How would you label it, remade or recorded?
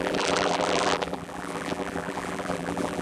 remade